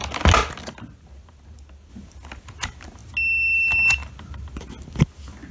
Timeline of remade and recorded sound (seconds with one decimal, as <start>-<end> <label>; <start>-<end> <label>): 0.0-5.5 recorded